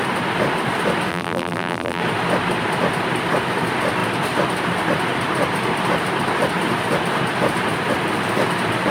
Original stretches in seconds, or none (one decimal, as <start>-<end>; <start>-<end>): 0.0-1.1; 2.0-8.9